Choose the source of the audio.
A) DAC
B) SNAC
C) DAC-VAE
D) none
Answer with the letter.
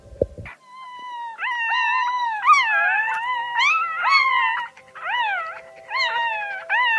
D